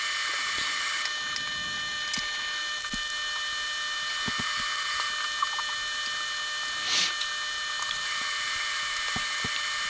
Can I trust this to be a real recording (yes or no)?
yes